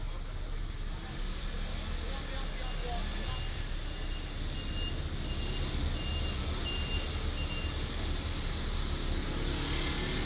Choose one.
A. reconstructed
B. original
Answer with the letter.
B